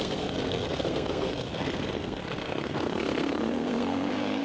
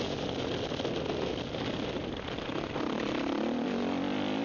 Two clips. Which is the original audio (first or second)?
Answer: second